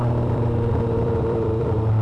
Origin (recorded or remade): remade